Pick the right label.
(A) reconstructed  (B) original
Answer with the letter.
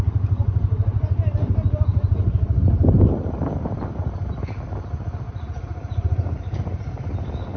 B